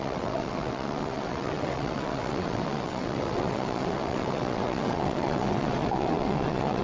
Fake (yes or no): yes